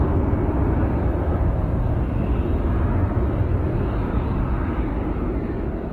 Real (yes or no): yes